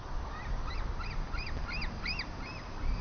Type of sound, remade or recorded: recorded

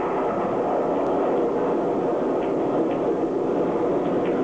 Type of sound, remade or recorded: recorded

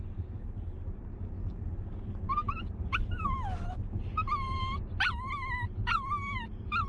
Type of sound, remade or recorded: recorded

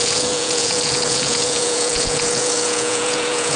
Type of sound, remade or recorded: remade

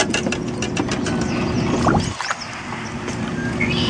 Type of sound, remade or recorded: recorded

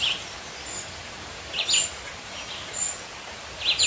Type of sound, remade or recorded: recorded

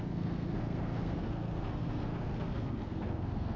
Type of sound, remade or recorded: remade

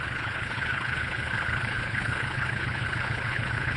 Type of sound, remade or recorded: remade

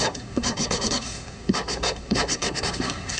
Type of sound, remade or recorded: remade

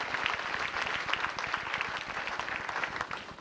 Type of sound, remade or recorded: recorded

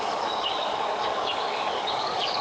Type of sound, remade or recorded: remade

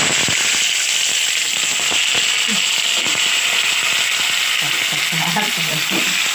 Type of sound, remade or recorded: recorded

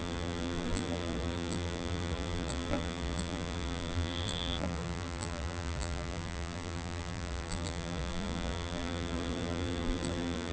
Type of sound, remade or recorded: remade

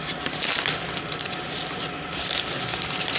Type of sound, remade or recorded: recorded